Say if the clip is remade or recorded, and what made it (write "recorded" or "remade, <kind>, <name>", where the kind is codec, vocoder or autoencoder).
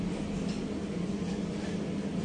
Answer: recorded